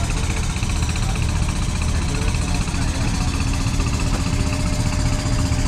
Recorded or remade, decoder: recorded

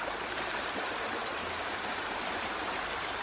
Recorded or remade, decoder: remade, vocoder, BigVGAN v2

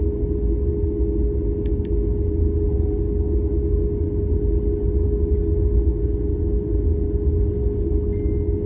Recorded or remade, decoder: recorded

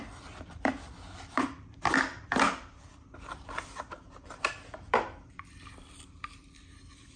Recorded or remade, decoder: remade, vocoder, BigVGAN v2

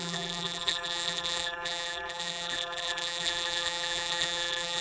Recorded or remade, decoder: remade, vocoder, BigVGAN v2